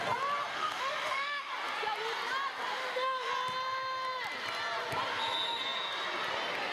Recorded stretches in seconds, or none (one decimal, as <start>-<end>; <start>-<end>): 0.0-0.5; 1.5-2.7; 3.3-6.7